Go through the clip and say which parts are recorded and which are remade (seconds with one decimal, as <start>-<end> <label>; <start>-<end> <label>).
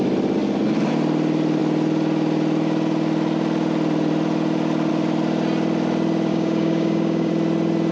0.0-6.3 recorded; 6.3-7.3 remade; 7.3-7.9 recorded